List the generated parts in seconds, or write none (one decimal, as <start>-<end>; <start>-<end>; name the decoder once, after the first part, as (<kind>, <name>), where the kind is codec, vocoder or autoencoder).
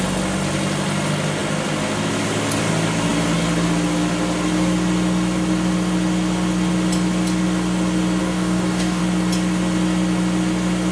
8.2-9.0 (codec, DAC)